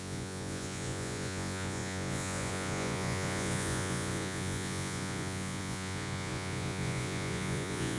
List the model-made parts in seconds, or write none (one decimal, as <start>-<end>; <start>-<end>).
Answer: 0.0-8.0